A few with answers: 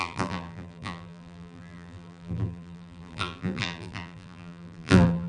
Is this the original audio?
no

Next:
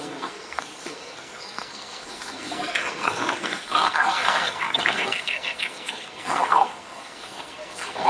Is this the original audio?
no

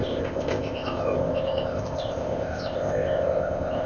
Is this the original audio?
no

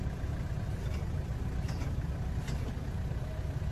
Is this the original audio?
yes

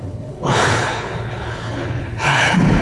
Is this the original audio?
no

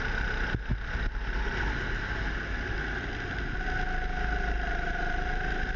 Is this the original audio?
yes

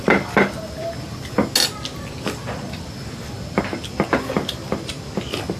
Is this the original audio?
yes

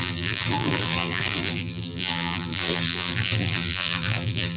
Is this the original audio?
no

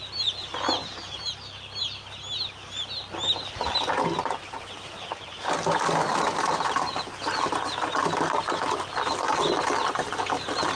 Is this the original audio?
yes